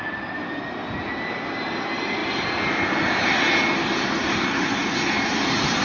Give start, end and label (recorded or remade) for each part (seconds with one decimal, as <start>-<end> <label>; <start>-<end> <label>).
0.0-5.8 recorded